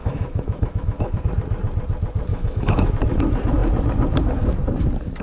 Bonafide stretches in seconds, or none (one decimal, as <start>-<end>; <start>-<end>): 1.2-2.3; 2.9-5.2